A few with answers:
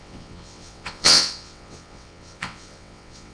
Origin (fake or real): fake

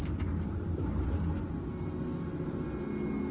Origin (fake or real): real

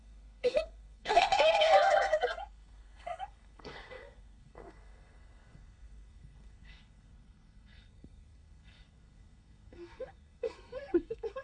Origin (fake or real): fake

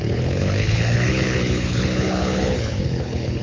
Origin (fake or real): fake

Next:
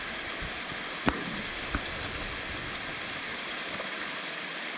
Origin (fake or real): real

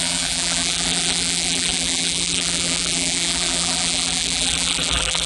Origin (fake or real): fake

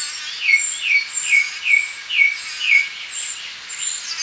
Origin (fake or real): real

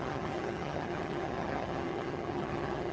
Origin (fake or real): fake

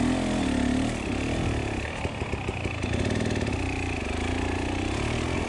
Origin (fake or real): real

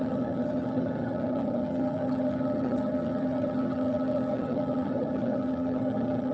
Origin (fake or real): fake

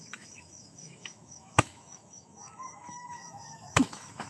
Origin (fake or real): fake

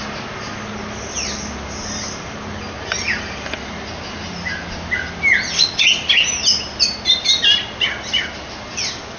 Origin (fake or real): real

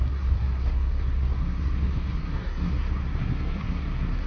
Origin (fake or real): fake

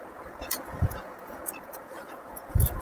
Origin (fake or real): fake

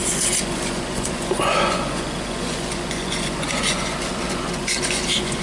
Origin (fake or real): fake